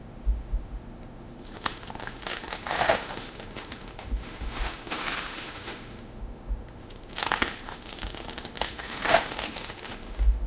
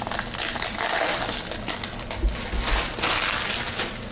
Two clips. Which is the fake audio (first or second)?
first